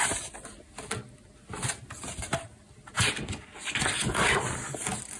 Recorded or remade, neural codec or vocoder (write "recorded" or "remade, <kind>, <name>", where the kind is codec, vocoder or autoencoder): recorded